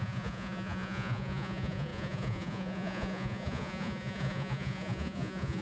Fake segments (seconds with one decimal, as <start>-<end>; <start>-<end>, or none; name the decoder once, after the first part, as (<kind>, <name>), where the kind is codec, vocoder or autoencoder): 0.0-5.6 (vocoder, Vocos)